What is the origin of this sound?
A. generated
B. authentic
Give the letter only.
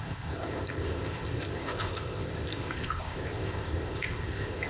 A